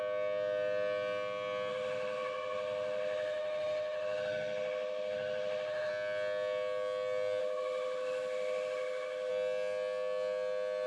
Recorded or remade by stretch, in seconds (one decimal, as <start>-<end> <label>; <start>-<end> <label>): 0.0-1.7 recorded; 1.7-5.9 remade; 5.9-7.4 recorded; 7.4-9.3 remade; 9.3-10.9 recorded